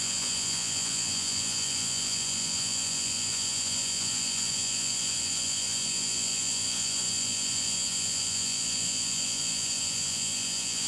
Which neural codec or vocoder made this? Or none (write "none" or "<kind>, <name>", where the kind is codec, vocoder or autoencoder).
vocoder, Vocos